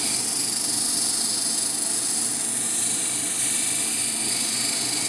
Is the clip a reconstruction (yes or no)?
no